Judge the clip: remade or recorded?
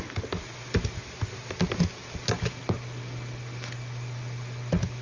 recorded